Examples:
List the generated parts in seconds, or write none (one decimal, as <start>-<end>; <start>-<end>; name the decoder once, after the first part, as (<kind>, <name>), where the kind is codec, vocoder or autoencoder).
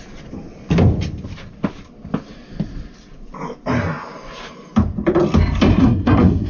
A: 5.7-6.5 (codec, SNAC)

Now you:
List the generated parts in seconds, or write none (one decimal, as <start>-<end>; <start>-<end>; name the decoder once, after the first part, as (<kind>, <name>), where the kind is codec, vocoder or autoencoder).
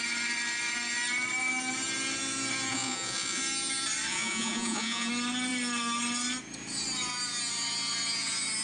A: 2.7-3.4 (vocoder, Vocos); 4.1-5.1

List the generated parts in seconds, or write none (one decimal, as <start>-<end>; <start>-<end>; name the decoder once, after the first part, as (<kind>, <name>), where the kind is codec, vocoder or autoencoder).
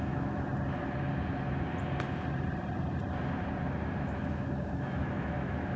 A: 0.0-0.5 (autoencoder, DAC-VAE); 4.0-5.8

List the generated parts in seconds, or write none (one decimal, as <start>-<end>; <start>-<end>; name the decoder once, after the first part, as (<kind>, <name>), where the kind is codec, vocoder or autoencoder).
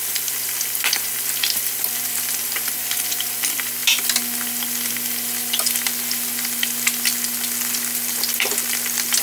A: none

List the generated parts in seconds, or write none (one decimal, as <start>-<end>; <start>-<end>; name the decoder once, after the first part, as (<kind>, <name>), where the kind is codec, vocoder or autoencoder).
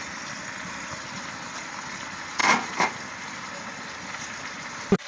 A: none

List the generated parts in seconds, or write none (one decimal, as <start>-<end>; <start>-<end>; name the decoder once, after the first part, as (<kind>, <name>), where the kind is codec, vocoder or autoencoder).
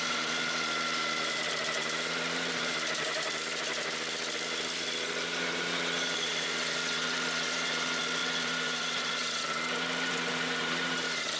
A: 0.0-11.4 (vocoder, BigVGAN v2)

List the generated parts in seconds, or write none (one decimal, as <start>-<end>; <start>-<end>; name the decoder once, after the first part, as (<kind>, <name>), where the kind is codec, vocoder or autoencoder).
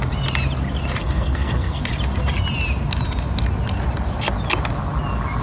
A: 1.0-1.8 (codec, SNAC)